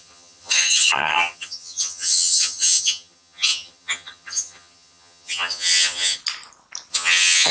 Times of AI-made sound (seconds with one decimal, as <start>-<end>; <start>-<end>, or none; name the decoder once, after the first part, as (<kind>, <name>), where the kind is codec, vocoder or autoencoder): 0.0-6.2 (vocoder, HiFi-GAN); 6.9-7.5